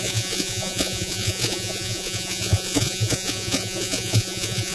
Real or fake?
fake